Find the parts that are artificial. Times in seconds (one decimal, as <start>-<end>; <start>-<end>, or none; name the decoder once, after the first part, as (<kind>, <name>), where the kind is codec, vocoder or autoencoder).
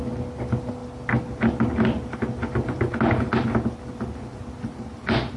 none